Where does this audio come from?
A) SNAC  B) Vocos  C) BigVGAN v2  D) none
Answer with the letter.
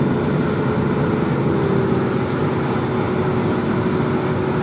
D